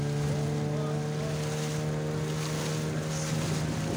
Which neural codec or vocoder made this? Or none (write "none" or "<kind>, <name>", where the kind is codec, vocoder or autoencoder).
none